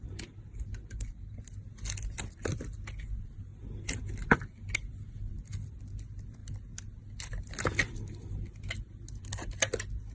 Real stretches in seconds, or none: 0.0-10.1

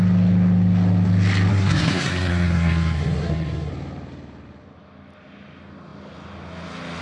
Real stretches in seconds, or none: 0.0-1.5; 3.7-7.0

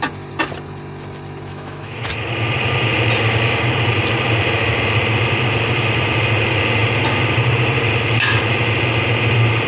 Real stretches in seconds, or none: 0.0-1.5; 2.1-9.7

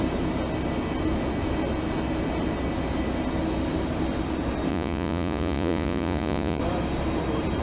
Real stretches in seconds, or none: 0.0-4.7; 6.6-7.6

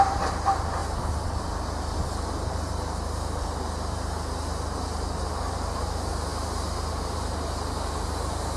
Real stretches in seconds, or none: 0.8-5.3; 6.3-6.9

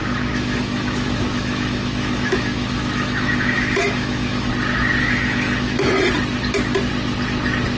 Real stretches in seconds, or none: 4.5-5.0; 5.9-7.8

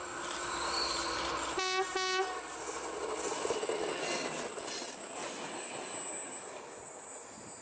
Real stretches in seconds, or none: 0.0-0.4; 1.3-3.3; 4.3-7.6